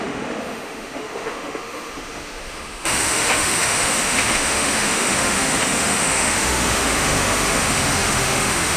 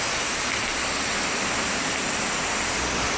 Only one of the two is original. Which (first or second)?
second